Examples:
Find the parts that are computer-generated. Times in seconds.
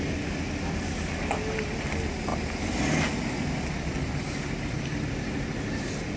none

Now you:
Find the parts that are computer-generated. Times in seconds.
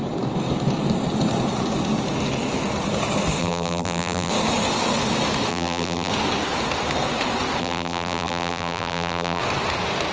3.4-4.3; 5.5-6.1; 7.6-9.4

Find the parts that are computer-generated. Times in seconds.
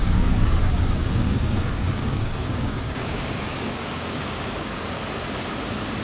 0.0-5.0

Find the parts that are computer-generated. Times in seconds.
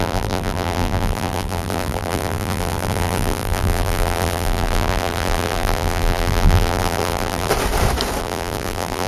0.0-7.5; 8.2-9.1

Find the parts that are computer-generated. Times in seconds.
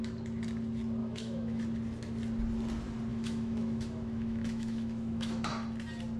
1.0-1.6; 3.1-5.5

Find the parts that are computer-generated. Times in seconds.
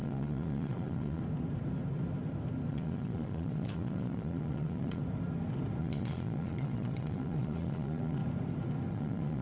0.0-1.2; 2.7-5.0; 5.8-8.2; 8.9-9.4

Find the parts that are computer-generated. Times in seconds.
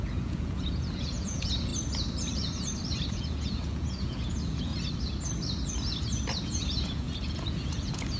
0.0-1.7; 3.1-4.7; 6.4-8.2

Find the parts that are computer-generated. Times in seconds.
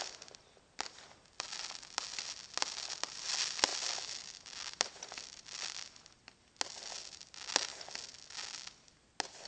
none